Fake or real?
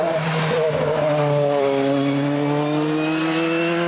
real